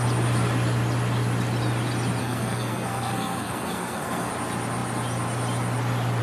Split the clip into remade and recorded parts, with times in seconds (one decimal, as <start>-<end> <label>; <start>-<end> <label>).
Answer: 0.0-2.2 recorded; 2.2-4.3 remade; 4.3-6.2 recorded